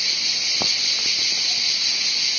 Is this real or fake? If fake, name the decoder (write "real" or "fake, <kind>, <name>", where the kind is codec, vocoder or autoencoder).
real